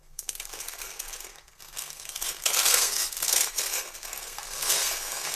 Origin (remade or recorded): remade